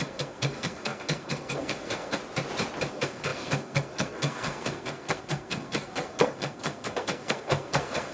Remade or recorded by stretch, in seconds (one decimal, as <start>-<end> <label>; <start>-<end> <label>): 0.0-2.2 remade; 2.2-2.9 recorded; 2.9-8.1 remade